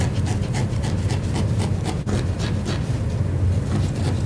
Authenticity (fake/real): real